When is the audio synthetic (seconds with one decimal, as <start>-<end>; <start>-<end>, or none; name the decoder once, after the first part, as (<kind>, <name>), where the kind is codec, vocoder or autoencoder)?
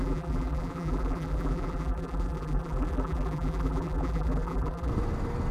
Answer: 0.0-4.9 (vocoder, BigVGAN v2)